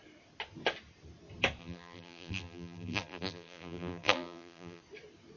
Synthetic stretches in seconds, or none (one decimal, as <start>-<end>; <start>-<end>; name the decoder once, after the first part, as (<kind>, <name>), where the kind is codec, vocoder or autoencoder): 1.6-4.8 (vocoder, BigVGAN v2)

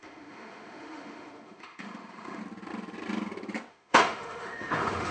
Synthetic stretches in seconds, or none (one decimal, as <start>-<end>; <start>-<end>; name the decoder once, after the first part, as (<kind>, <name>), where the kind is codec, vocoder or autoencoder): 0.0-2.4 (autoencoder, DAC-VAE); 3.7-5.1

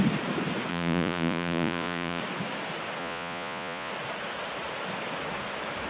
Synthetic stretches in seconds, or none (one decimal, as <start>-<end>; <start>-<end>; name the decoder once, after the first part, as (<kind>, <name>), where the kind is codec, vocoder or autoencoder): 0.7-2.2 (vocoder, Vocos); 3.0-3.9

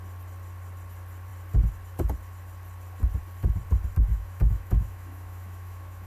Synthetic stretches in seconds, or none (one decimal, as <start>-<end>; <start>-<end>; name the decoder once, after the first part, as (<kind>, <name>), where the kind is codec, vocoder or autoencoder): 4.1-6.1 (autoencoder, DAC-VAE)